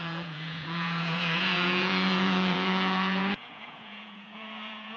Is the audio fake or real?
fake